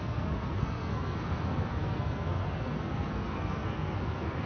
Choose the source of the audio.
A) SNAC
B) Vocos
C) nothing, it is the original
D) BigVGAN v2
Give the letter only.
A